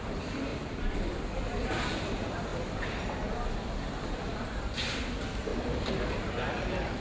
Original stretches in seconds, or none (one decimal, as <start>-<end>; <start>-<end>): none